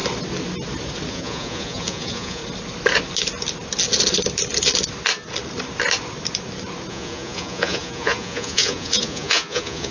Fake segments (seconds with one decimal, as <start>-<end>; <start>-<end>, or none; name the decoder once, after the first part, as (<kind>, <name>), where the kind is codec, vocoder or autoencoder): 1.1-2.4 (vocoder, Vocos); 6.9-9.9